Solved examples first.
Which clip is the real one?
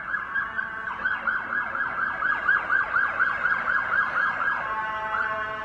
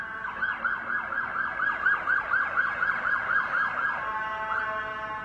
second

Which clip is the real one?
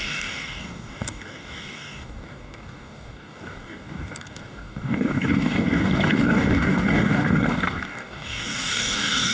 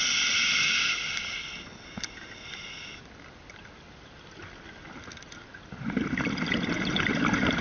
second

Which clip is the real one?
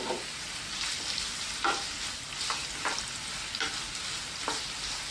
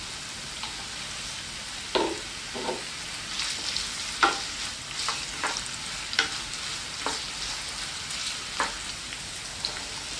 second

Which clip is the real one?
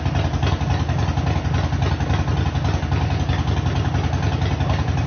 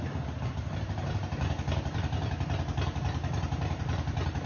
first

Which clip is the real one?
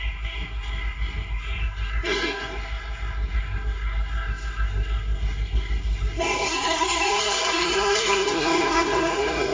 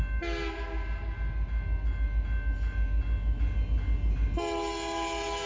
second